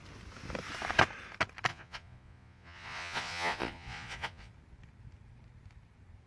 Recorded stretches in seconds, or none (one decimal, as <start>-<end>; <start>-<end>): 0.0-1.7; 4.5-6.3